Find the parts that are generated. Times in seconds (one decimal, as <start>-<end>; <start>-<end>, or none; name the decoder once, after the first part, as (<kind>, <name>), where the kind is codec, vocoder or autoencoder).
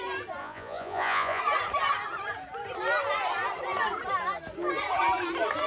0.4-1.4 (vocoder, Vocos)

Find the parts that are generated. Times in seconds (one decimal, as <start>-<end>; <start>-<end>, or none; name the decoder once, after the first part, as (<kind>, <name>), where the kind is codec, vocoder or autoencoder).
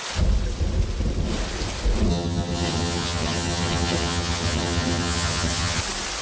2.1-5.8 (vocoder, HiFi-GAN)